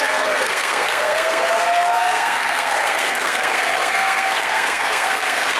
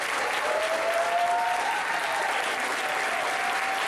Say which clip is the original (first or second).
second